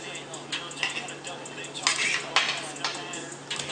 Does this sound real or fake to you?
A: real